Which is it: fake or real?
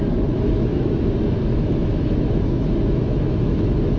fake